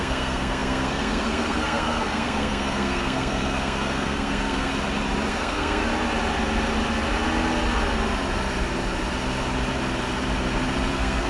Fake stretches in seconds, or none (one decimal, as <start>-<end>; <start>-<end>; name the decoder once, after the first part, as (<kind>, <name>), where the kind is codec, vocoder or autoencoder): 0.0-4.7 (codec, SNAC); 5.3-5.9; 10.9-11.3